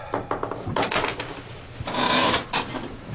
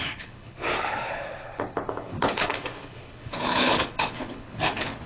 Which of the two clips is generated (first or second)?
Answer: second